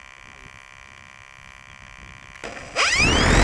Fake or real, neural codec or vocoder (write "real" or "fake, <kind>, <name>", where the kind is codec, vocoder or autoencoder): real